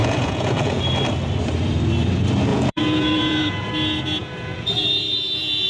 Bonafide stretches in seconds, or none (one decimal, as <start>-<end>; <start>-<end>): 0.8-2.5; 3.7-4.2